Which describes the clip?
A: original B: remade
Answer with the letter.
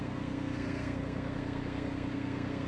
B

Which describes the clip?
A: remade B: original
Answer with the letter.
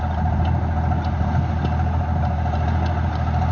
B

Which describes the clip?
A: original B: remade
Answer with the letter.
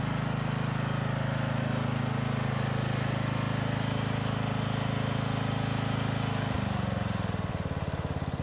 A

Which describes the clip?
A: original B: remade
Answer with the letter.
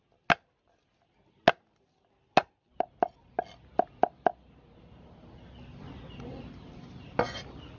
A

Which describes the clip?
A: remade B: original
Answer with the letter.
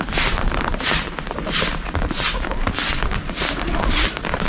A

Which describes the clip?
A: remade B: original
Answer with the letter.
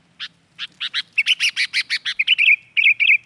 B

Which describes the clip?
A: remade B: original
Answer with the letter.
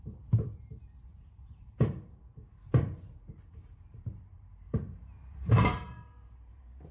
A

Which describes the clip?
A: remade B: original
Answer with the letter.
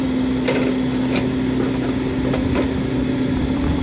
B